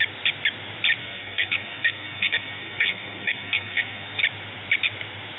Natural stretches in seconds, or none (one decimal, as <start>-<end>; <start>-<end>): 0.0-1.0; 4.2-5.4